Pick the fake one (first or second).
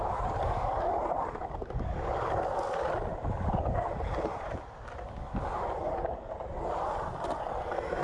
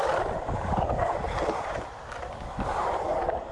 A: second